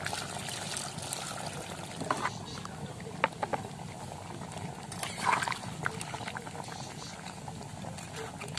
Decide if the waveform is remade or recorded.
recorded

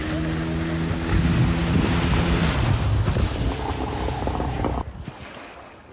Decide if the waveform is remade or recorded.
recorded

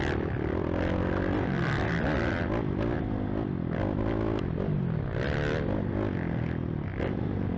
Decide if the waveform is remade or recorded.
recorded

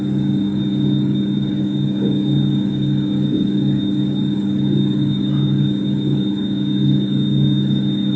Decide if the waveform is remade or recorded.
remade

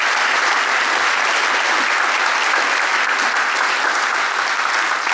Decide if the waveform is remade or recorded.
recorded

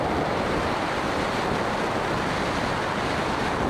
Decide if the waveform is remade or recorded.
recorded